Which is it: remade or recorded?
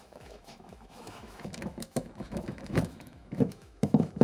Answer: remade